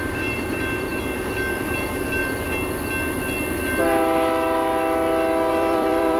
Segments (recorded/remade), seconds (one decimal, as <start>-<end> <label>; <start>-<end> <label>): 0.0-2.2 remade; 2.2-5.5 recorded; 5.5-6.2 remade